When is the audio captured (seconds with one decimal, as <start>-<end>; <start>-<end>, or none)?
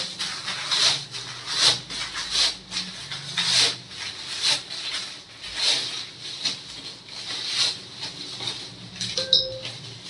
0.0-10.1